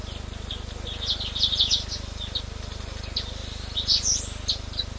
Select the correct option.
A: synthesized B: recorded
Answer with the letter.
B